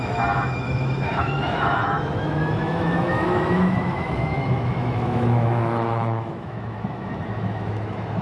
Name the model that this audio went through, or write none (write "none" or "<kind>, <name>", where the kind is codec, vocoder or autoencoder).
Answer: autoencoder, DAC-VAE